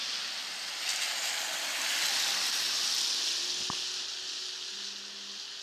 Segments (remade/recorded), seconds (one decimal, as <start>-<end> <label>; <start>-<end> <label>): 0.0-5.6 recorded